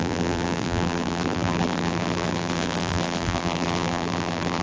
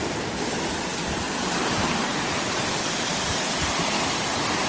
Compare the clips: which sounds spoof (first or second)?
first